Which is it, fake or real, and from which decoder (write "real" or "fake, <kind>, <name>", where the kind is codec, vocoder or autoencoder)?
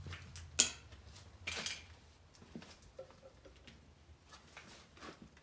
real